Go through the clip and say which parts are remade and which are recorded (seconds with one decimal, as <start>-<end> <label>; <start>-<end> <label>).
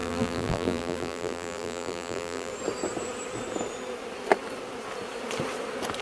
0.0-2.5 remade; 2.5-6.0 recorded